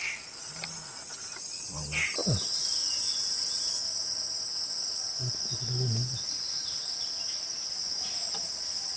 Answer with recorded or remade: recorded